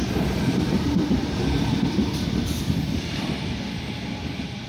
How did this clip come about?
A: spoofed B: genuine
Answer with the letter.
A